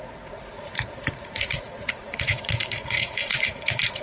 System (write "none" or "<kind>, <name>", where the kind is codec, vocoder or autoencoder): vocoder, Vocos